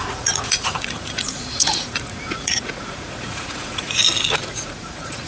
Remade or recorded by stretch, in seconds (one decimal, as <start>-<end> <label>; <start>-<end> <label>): 0.0-4.0 remade; 4.0-4.5 recorded; 4.5-5.3 remade